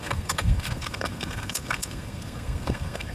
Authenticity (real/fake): fake